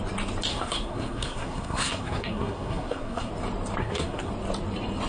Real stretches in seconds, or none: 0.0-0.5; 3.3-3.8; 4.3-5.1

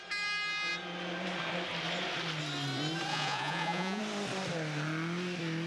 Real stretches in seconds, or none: 0.0-3.1; 4.0-5.7

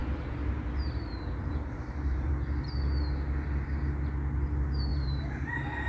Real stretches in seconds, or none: 2.3-4.9